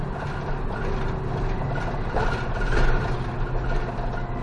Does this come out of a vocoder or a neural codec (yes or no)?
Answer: no